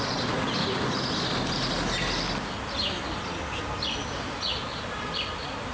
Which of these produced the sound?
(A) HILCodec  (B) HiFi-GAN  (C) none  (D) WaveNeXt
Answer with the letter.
C